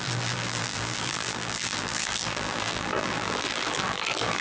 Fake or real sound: fake